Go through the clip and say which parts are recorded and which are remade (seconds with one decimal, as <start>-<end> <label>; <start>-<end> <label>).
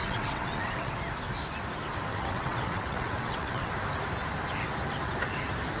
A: 0.0-0.9 remade; 0.9-2.1 recorded; 2.1-3.7 remade; 3.7-5.8 recorded